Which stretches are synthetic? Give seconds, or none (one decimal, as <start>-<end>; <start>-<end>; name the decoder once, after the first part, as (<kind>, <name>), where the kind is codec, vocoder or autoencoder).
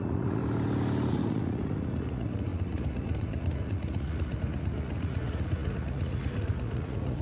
0.0-0.4 (vocoder, Vocos); 1.1-7.2